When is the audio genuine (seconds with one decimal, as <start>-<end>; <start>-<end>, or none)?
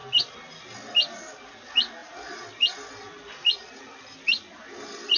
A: 0.0-5.2